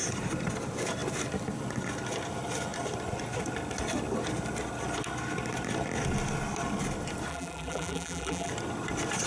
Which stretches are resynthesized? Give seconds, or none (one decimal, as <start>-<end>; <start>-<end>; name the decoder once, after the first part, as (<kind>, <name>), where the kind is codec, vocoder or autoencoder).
7.3-8.5 (vocoder, BigVGAN v2)